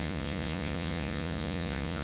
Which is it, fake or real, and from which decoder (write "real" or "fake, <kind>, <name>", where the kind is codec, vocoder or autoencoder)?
fake, vocoder, Vocos